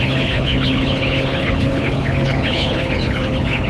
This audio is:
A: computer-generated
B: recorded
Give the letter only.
A